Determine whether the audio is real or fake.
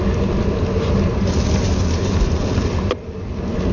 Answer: real